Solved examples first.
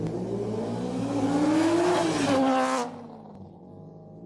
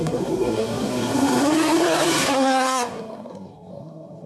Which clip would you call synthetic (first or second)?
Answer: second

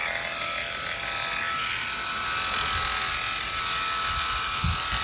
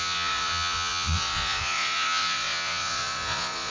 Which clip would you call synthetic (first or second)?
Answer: second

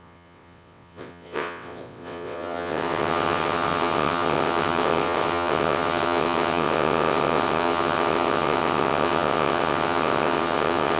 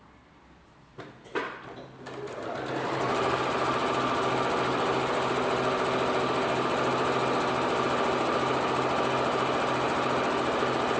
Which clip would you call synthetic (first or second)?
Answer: first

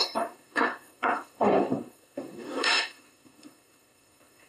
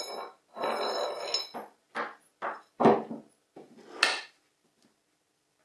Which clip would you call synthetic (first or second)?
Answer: first